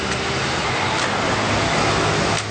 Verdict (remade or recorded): recorded